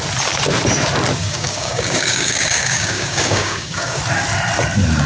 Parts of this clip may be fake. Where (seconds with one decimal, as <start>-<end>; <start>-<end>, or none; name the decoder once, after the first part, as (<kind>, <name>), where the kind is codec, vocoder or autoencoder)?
1.2-4.0 (codec, DAC)